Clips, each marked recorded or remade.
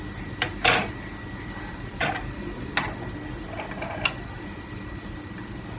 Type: recorded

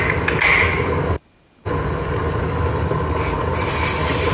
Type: recorded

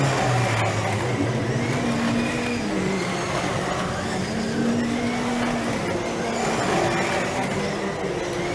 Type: recorded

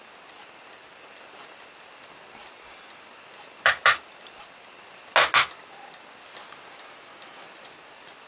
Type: recorded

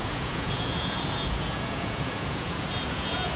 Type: remade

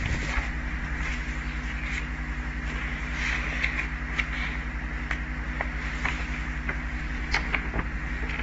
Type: recorded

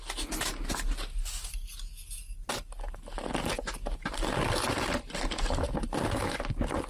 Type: recorded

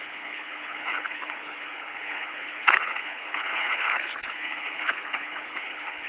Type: remade